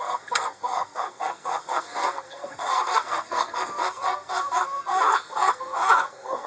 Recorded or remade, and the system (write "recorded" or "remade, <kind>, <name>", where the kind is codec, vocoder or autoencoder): remade, codec, SNAC